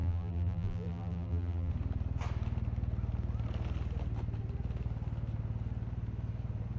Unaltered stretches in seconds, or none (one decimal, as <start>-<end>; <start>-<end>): 1.7-6.8

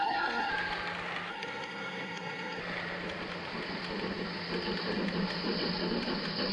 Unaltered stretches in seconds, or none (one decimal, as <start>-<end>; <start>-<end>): 0.5-1.3; 2.6-6.5